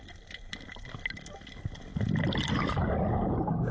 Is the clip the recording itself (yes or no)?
yes